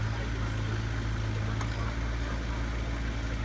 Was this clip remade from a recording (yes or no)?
no